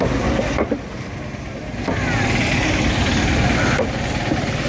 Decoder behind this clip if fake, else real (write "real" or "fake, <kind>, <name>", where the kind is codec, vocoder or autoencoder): real